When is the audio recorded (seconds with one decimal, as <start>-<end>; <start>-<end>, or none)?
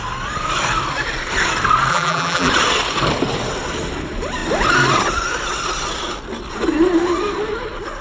0.0-1.9; 2.5-8.0